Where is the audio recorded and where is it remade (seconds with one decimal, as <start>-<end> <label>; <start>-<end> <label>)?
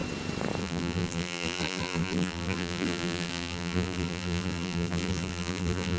0.0-0.6 recorded; 0.6-6.0 remade